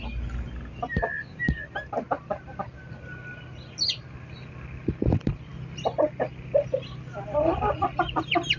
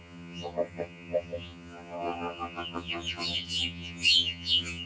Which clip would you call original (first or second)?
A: first